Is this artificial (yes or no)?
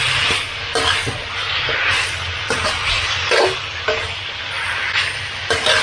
no